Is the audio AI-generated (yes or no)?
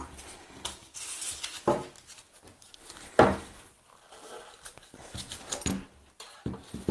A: no